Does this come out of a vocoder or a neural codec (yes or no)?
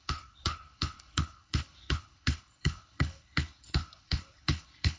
yes